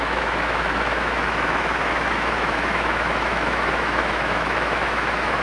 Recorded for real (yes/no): no